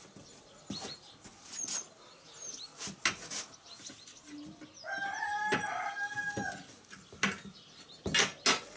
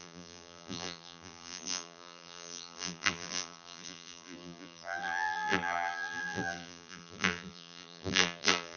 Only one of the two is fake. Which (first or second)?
second